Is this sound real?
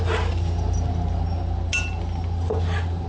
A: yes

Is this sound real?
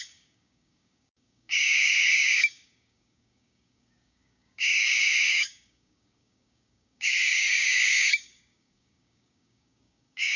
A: no